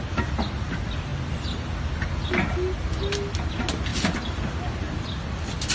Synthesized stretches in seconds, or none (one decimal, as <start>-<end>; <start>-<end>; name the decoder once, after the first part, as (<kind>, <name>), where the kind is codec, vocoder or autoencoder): none

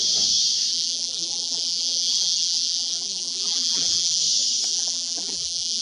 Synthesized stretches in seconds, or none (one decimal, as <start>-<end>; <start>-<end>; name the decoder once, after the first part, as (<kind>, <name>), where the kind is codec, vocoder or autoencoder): 0.7-4.2 (vocoder, BigVGAN v2); 4.7-5.8

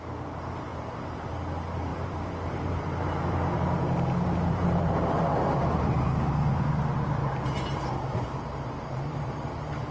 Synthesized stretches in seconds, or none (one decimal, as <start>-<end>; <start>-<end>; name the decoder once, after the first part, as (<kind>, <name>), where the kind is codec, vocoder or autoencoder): 0.7-1.3 (vocoder, BigVGAN v2); 1.9-6.7; 7.2-9.3

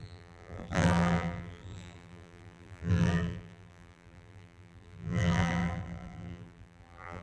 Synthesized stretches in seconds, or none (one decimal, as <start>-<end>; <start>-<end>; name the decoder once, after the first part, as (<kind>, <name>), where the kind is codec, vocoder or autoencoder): 0.0-7.2 (vocoder, BigVGAN v2)

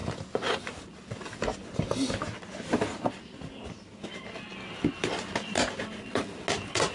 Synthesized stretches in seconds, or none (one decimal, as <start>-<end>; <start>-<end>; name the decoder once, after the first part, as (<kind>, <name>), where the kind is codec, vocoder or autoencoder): none

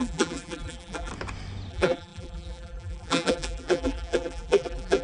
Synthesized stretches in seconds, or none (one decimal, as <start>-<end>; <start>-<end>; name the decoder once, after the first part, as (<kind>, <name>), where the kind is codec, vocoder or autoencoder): 0.0-1.1 (vocoder, BigVGAN v2); 1.7-5.0

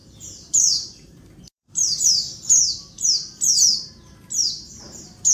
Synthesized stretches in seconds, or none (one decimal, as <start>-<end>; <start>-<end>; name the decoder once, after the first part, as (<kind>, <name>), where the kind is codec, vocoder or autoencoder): 0.0-2.4 (vocoder, BigVGAN v2); 4.7-5.3

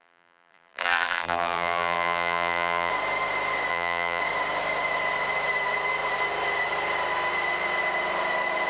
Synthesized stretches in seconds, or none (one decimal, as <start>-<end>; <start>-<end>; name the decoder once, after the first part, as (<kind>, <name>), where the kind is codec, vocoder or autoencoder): 0.0-2.9 (vocoder, BigVGAN v2); 3.7-4.2